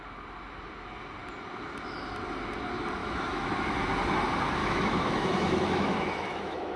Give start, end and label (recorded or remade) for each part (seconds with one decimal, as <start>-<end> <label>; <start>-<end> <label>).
0.0-3.0 recorded; 3.0-3.5 remade; 3.5-4.6 recorded; 4.6-6.8 remade